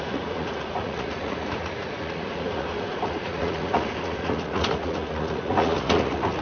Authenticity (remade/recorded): remade